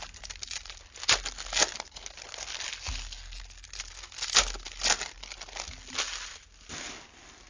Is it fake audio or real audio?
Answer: real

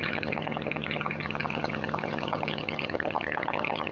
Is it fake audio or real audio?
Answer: fake